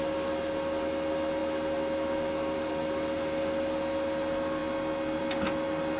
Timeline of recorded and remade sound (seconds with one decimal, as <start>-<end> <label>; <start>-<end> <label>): 0.0-6.0 recorded